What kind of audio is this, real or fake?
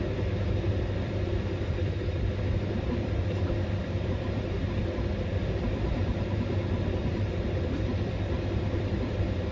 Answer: fake